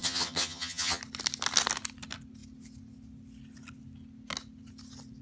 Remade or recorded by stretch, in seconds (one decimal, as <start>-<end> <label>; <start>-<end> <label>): 0.0-1.0 remade; 1.0-5.2 recorded